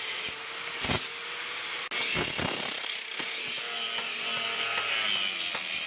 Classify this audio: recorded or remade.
recorded